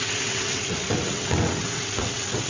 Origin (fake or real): fake